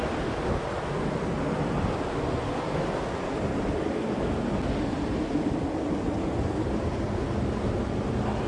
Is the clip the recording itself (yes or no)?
yes